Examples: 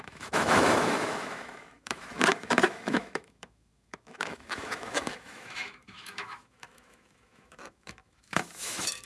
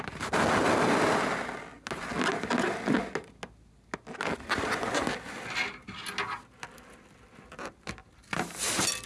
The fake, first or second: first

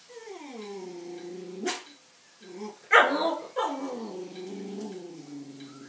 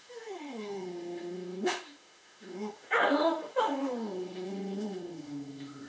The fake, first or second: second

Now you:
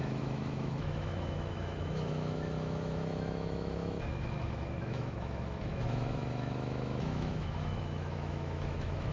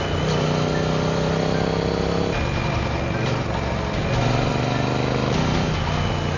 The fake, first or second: first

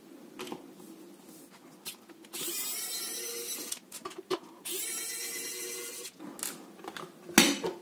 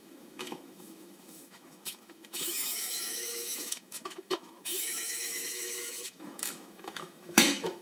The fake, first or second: second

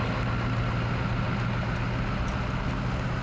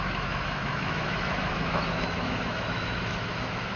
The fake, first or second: second